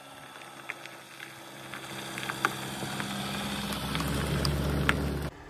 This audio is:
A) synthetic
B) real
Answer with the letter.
B